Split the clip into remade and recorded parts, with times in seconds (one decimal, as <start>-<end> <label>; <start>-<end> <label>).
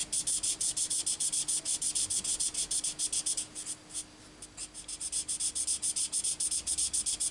0.0-7.3 recorded